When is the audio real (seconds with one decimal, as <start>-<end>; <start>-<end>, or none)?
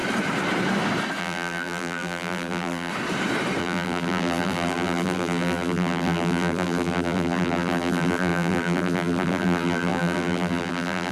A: 0.0-1.2; 2.9-3.6